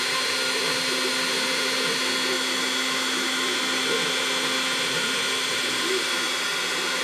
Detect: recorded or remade recorded